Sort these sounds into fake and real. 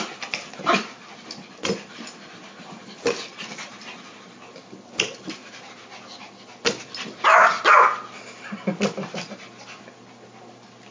real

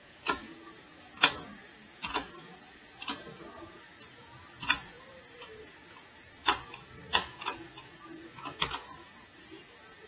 fake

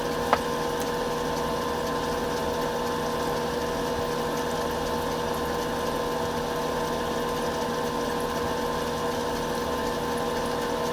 real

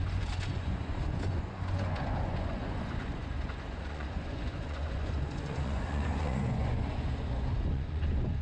fake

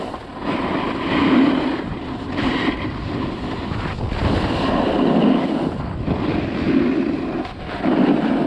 real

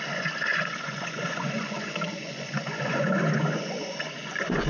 fake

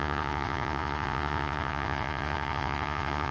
fake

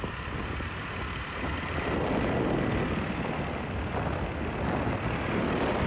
real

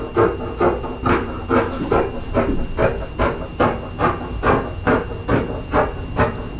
real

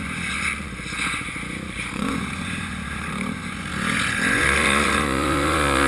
fake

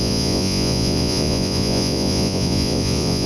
fake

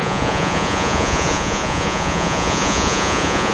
fake